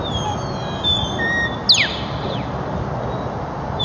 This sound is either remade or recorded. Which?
recorded